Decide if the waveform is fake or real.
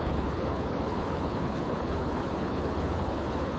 fake